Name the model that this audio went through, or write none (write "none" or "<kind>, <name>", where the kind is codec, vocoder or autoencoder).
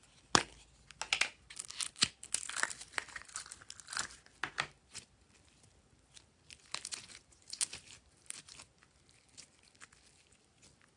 none